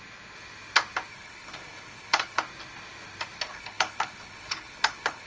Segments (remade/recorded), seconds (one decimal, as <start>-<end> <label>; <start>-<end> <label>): 0.0-1.1 recorded; 1.1-2.4 remade; 2.4-3.5 recorded; 3.5-5.3 remade